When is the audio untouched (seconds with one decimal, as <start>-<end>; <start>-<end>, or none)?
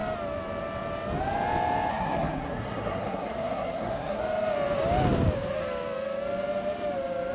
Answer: 0.0-1.9; 4.2-7.3